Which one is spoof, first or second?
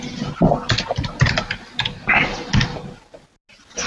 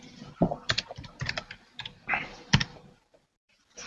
second